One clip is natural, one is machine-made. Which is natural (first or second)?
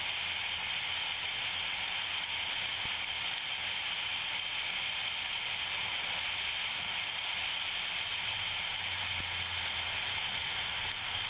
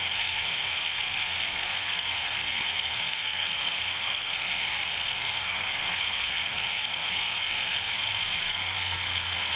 first